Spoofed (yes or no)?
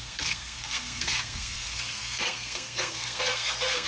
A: yes